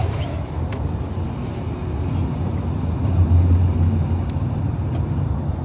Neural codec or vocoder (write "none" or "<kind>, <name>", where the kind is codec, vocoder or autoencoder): none